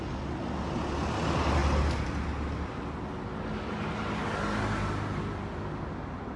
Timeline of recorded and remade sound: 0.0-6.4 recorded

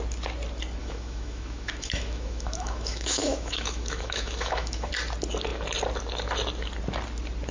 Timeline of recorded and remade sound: 0.0-0.8 recorded; 0.8-4.9 remade; 4.9-7.5 recorded

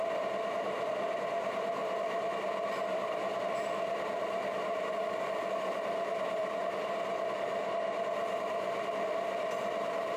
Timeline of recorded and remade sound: 0.0-10.2 recorded